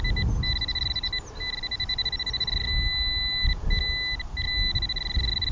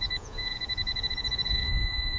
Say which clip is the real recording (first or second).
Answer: first